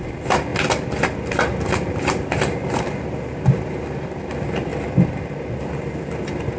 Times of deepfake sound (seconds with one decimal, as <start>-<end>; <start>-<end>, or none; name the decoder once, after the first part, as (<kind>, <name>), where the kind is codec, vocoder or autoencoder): none